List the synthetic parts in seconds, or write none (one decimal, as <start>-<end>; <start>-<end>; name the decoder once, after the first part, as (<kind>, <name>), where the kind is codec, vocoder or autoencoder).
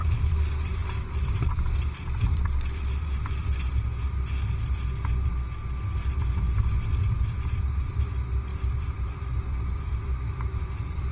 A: 0.0-3.4 (vocoder, BigVGAN v2); 6.9-11.1